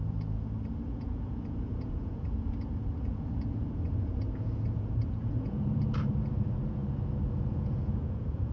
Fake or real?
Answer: fake